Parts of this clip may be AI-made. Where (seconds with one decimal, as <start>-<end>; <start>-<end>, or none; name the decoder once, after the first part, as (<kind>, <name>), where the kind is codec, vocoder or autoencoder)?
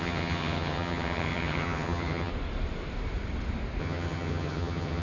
0.0-2.3 (vocoder, HiFi-GAN); 3.8-5.0